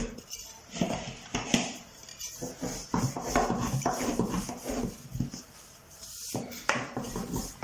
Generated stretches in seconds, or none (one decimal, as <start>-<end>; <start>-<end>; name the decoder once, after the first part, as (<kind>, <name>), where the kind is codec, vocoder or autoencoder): none